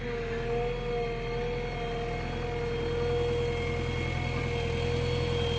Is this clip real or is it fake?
real